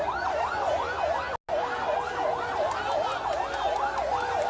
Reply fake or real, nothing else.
real